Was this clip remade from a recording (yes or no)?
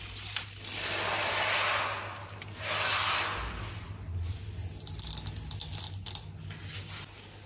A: no